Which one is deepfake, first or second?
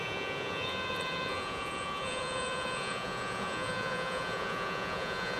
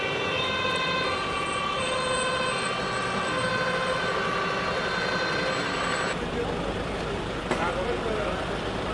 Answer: first